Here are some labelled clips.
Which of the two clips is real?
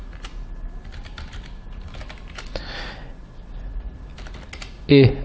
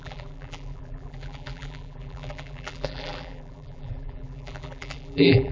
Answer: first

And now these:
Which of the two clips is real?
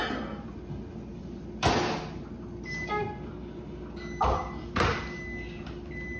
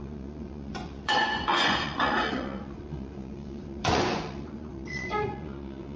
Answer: first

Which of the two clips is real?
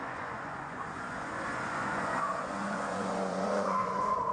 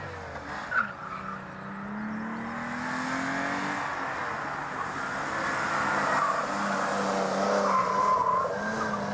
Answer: second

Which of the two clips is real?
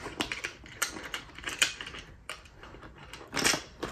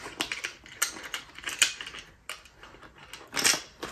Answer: second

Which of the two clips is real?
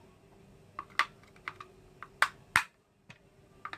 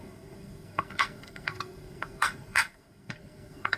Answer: first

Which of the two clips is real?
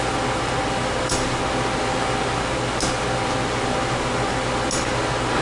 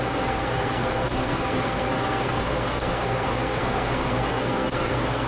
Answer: first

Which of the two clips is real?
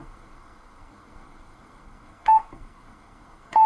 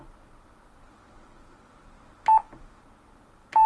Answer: second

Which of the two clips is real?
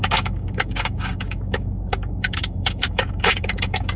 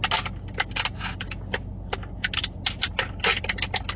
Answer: second